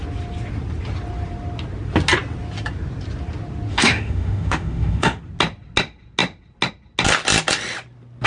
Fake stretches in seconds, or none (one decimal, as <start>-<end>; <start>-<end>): 3.7-5.2